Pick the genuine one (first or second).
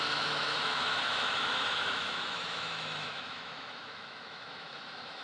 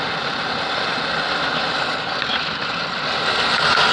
second